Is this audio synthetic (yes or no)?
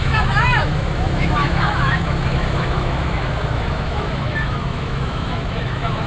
yes